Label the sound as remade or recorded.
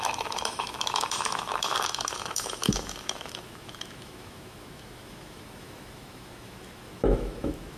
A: remade